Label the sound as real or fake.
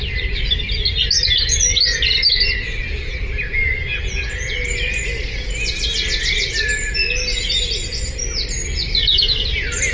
real